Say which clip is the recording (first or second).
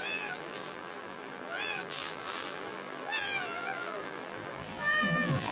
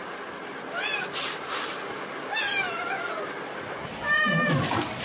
second